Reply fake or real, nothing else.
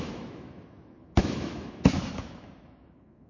fake